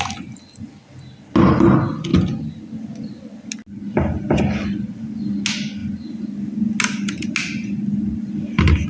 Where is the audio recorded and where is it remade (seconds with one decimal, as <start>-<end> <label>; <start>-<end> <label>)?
0.0-8.9 recorded